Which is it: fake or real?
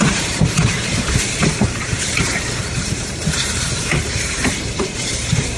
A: fake